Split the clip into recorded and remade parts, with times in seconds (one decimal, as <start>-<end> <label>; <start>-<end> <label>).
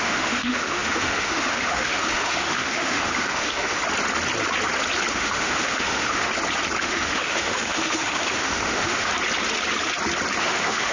0.0-3.8 remade; 3.8-5.1 recorded; 5.1-6.3 remade; 6.3-6.8 recorded; 6.8-9.1 remade; 9.1-10.4 recorded; 10.4-10.9 remade